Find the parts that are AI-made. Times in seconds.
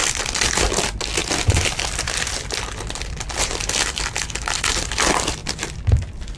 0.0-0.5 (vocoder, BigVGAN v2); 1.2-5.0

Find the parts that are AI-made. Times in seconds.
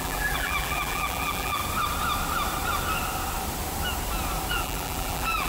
0.0-1.6 (vocoder, BigVGAN v2); 4.5-5.5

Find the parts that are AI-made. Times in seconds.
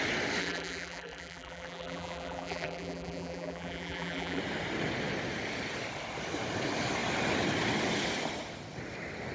0.4-4.4 (vocoder, BigVGAN v2)